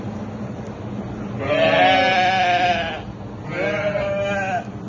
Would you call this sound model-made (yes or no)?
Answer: no